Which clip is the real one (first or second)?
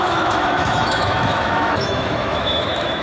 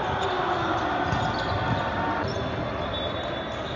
second